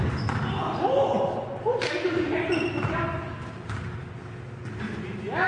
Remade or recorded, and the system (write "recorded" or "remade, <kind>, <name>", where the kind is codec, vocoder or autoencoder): recorded